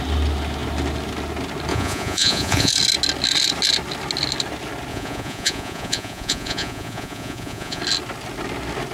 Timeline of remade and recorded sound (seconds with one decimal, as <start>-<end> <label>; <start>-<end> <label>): 0.0-1.7 recorded; 1.7-2.7 remade; 2.7-4.9 recorded; 4.9-7.8 remade; 7.8-8.9 recorded

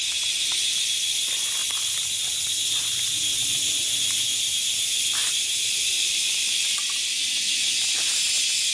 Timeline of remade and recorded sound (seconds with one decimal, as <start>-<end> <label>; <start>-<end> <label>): 0.0-5.2 recorded; 5.2-7.3 remade; 7.3-8.7 recorded

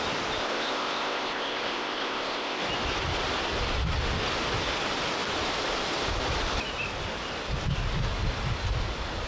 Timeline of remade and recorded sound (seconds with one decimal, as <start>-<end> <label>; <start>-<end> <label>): 0.0-0.4 recorded; 0.4-2.6 remade; 2.6-9.3 recorded

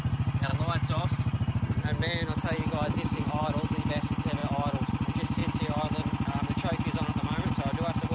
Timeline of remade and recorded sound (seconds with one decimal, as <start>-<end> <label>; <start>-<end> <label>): 0.0-8.1 recorded